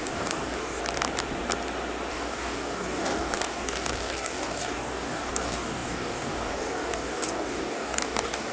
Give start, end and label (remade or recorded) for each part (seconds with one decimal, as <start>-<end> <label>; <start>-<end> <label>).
0.0-0.8 remade; 0.8-2.1 recorded; 2.1-8.5 remade